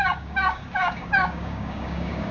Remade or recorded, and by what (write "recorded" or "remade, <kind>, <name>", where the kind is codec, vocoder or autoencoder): remade, codec, DAC